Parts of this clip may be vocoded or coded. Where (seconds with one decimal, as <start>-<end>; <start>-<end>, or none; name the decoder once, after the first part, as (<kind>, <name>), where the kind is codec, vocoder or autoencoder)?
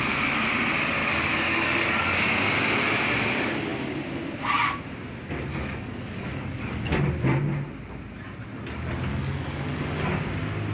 1.0-2.3 (codec, DAC); 5.5-7.0; 9.1-10.2